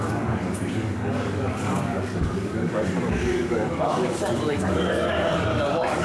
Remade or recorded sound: remade